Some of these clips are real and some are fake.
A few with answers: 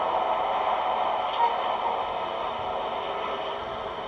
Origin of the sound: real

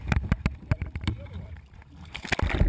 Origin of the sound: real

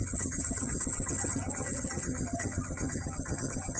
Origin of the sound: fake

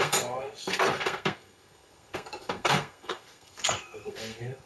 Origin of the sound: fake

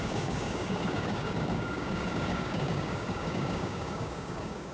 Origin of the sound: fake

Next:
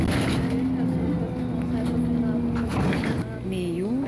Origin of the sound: real